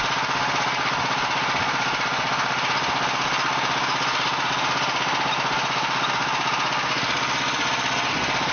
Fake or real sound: real